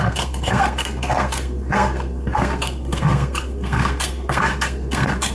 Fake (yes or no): yes